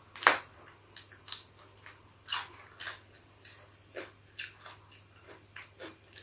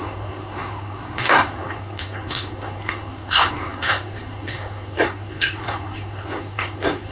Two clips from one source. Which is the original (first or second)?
first